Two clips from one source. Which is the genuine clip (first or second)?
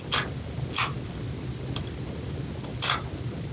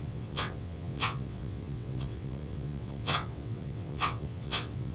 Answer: first